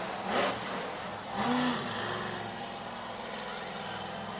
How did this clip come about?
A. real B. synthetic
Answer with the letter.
A